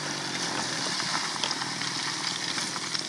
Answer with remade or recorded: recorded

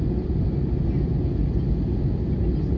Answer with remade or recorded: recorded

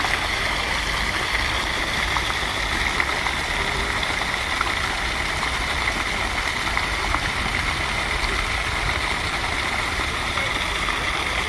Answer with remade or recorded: recorded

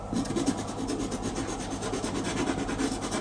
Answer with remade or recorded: recorded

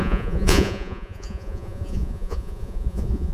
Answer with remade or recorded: remade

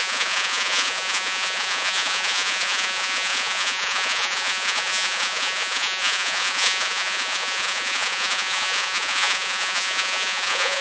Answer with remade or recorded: remade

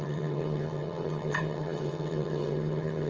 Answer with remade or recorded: remade